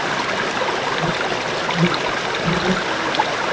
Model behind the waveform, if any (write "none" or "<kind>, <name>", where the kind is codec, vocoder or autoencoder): none